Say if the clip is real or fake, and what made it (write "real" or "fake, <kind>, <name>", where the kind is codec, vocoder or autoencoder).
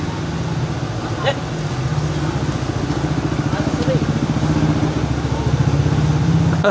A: real